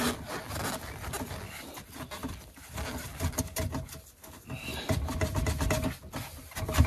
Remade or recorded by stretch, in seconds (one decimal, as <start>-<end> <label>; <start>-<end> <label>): 0.0-6.9 recorded